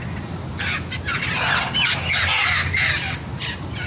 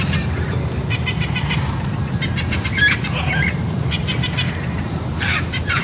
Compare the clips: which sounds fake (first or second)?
second